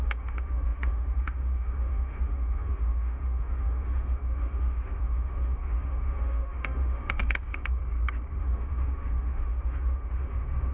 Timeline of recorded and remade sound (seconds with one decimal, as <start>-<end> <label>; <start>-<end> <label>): 0.0-7.8 remade; 7.8-8.4 recorded; 8.4-10.7 remade